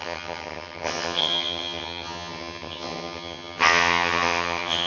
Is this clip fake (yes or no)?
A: yes